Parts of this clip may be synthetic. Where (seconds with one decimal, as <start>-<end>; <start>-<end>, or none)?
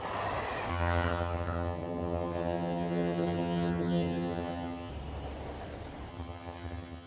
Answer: 0.7-4.9; 6.1-7.1